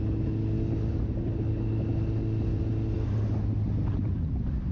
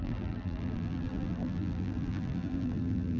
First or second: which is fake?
second